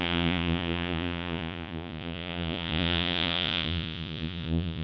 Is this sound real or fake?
fake